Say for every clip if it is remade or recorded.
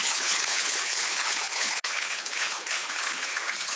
remade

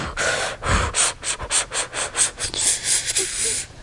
recorded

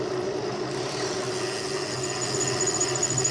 recorded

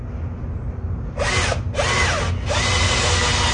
recorded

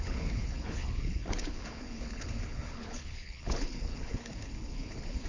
remade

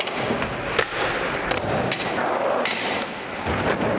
recorded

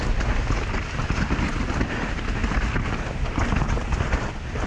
recorded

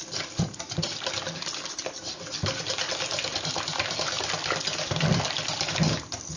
recorded